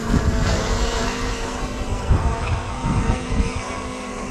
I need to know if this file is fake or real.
fake